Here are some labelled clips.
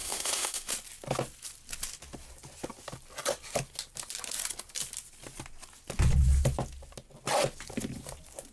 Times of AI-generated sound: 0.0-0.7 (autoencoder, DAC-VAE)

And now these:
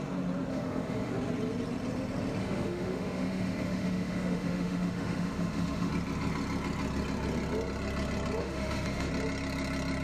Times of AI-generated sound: 0.5-1.1 (autoencoder, DAC-VAE); 2.4-5.9; 8.4-9.1